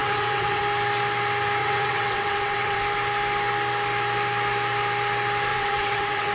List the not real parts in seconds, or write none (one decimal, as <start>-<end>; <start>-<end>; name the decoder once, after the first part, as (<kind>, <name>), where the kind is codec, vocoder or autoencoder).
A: 0.0-0.6 (vocoder, WaveNeXt); 1.6-2.8; 5.5-6.3